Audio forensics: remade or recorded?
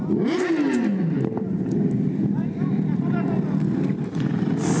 recorded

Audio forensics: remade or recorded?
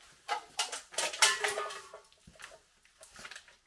recorded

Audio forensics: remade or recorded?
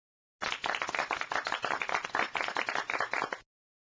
recorded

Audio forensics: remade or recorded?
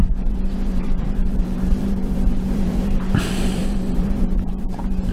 remade